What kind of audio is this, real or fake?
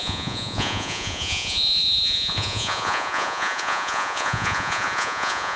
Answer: fake